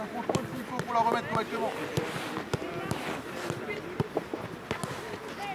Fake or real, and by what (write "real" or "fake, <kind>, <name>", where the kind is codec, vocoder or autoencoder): real